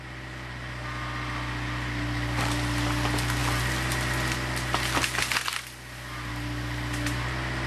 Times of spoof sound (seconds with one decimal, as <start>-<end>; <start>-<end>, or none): none